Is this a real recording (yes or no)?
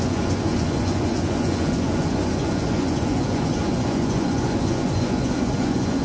no